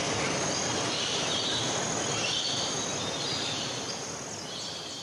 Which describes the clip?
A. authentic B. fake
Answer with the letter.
A